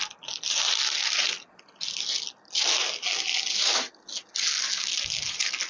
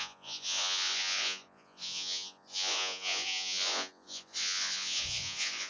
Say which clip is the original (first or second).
first